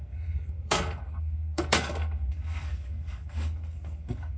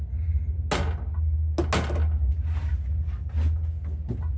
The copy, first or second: first